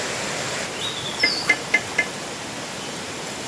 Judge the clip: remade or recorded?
recorded